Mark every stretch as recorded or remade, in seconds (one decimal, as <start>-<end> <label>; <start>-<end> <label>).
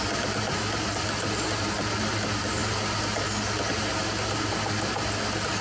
0.0-5.6 recorded